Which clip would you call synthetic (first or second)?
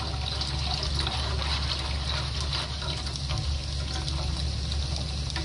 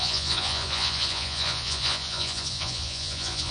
second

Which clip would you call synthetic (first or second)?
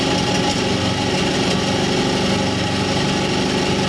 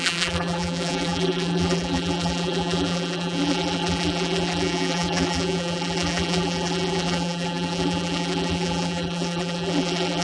second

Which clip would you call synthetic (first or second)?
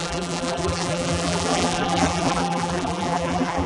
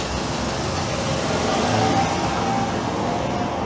first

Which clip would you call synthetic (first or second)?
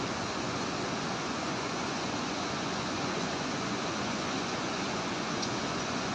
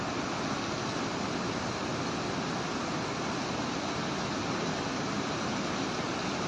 first